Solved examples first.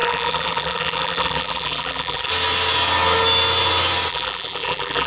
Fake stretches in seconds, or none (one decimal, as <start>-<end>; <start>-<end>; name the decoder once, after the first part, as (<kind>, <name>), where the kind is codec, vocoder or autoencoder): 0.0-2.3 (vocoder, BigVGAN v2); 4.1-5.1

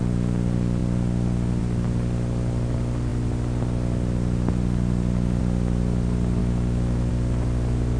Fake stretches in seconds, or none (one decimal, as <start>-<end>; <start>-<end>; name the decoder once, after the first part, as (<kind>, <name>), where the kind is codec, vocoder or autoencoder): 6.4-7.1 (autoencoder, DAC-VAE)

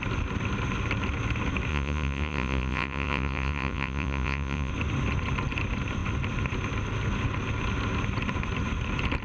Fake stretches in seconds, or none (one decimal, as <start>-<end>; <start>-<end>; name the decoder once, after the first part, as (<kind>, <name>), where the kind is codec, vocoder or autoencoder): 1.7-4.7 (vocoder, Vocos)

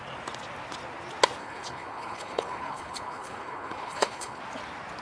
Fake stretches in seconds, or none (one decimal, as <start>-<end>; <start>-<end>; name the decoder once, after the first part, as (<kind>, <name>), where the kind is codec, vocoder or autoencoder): 1.4-4.4 (codec, HILCodec)

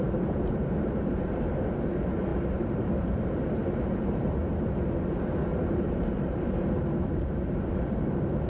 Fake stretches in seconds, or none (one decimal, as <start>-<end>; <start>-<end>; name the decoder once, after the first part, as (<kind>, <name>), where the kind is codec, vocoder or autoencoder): 0.0-4.4 (vocoder, BigVGAN v2); 5.6-8.5

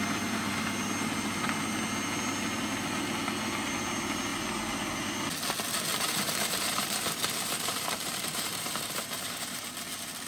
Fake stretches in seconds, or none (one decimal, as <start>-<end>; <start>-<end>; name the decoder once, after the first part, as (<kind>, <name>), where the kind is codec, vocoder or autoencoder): 5.9-9.7 (vocoder, BigVGAN v2)